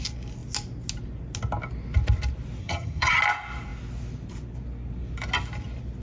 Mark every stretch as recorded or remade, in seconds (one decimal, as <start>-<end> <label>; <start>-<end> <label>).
0.0-2.6 recorded; 2.6-3.2 remade; 3.2-6.0 recorded